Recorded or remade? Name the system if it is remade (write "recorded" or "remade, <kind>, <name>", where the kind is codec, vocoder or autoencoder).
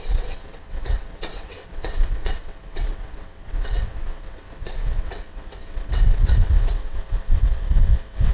remade, vocoder, WaveNeXt